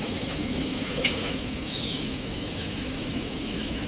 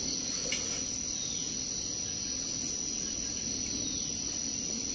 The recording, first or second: second